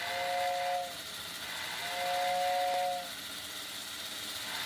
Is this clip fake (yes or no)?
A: no